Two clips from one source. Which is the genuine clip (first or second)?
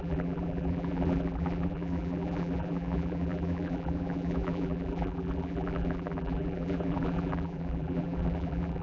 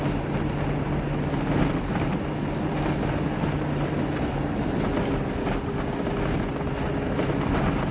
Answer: second